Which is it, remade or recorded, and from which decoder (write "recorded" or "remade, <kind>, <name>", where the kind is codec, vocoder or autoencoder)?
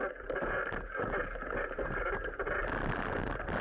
recorded